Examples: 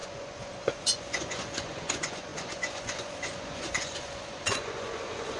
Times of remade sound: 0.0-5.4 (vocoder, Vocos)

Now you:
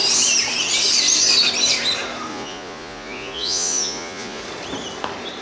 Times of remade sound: 2.3-4.4 (vocoder, Vocos)

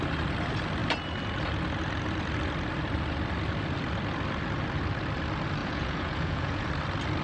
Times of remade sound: 5.6-6.7 (vocoder, Vocos)

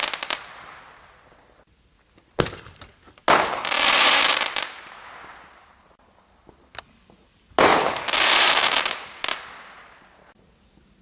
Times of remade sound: none